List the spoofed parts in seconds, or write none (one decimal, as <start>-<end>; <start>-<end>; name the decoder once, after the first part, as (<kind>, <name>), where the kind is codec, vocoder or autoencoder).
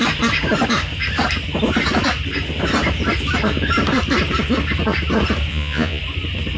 5.5-6.0 (vocoder, Vocos)